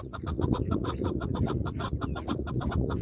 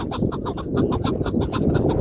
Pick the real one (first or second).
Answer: second